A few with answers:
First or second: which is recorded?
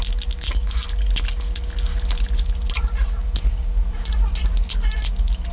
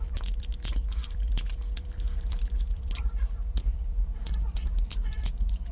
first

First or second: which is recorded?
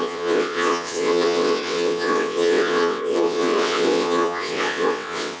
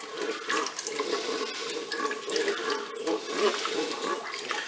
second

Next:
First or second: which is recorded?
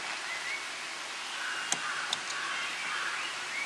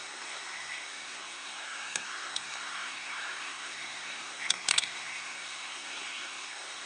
first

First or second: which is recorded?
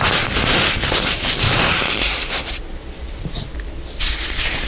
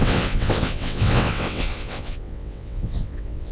first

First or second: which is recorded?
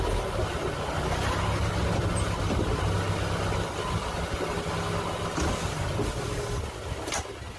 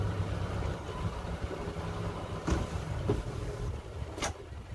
first